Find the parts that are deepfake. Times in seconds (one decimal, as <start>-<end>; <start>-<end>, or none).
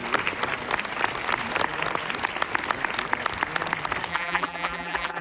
4.1-5.2